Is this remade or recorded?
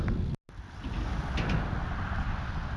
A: recorded